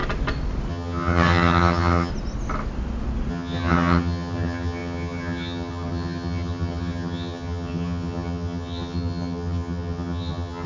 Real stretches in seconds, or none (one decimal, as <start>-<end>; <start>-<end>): 0.0-0.7; 2.1-3.3